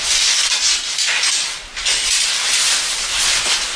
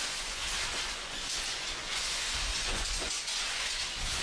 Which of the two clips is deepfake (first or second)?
second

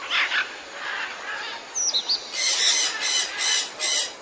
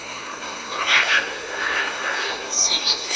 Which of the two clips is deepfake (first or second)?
second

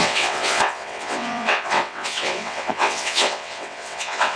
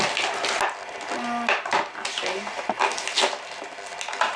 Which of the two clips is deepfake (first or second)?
first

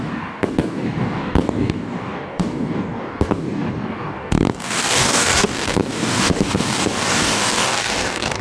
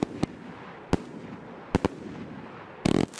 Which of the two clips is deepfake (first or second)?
first